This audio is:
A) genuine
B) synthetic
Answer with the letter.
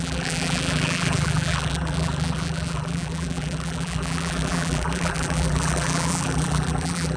B